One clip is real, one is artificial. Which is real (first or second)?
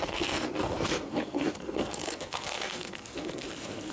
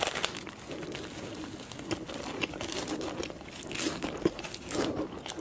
second